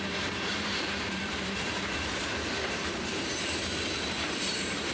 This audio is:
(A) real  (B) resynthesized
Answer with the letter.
B